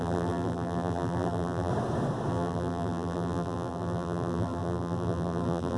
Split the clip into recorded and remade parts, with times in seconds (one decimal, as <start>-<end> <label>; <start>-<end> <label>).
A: 0.0-1.7 remade; 1.7-2.3 recorded; 2.3-5.8 remade